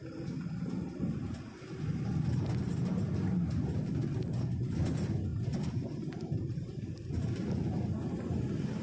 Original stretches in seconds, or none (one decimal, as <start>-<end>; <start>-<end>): 0.0-5.3; 7.1-8.8